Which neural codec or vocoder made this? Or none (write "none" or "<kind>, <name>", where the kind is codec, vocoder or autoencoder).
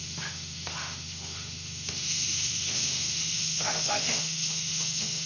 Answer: autoencoder, DAC-VAE